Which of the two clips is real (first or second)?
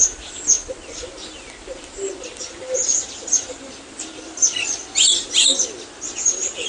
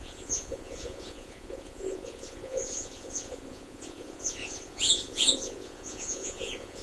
first